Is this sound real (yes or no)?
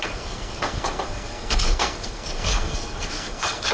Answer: no